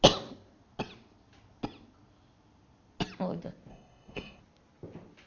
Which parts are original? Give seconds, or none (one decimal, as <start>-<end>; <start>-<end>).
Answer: 0.0-3.7; 4.4-5.3